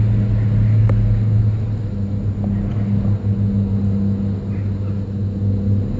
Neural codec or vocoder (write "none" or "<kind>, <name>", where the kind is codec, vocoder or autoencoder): none